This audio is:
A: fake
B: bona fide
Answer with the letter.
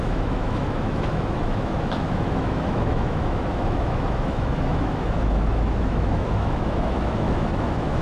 A